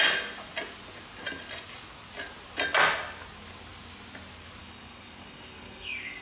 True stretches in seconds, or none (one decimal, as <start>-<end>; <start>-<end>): 0.0-4.6